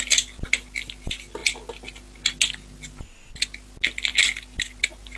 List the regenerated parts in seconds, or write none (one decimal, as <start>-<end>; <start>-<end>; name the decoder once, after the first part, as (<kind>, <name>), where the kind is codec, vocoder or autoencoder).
none